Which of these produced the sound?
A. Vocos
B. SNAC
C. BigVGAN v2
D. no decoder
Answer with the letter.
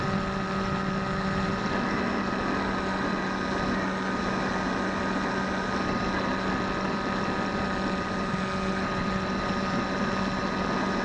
D